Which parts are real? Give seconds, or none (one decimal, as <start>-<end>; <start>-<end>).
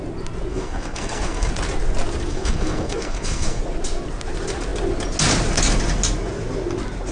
0.0-0.5; 1.5-2.3; 3.6-7.1